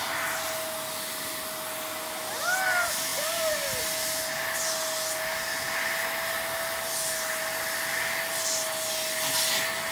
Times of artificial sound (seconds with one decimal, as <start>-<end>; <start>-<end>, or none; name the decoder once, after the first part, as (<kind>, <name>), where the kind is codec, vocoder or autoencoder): none